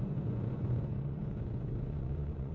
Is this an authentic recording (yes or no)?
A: no